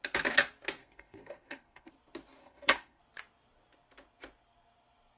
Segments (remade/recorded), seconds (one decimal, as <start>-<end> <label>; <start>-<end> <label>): 0.0-0.8 recorded; 0.8-1.9 remade; 1.9-2.4 recorded; 2.4-3.0 remade; 3.0-5.2 recorded